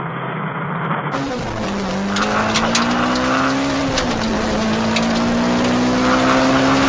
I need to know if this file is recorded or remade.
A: recorded